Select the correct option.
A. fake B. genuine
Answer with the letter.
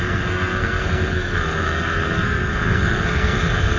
A